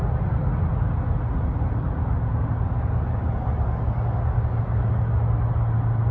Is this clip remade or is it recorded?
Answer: recorded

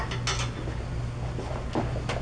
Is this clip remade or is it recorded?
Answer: recorded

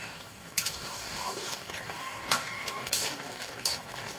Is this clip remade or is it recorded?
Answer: remade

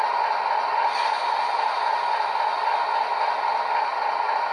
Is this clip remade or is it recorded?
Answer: recorded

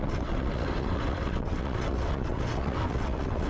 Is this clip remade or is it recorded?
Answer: remade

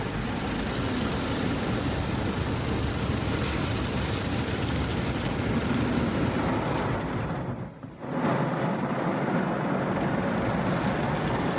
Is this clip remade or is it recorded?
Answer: recorded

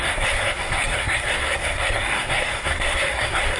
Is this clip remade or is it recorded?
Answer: remade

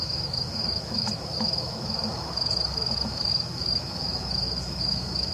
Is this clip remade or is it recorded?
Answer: remade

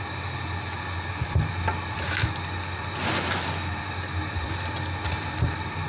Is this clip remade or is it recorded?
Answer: recorded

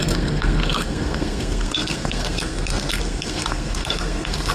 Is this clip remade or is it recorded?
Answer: remade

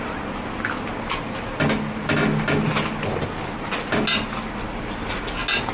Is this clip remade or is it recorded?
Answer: recorded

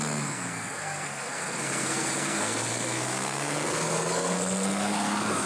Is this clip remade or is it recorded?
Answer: remade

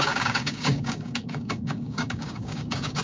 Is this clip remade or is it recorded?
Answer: remade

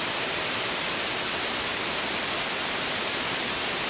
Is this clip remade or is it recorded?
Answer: remade